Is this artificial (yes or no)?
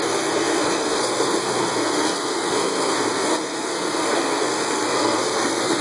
yes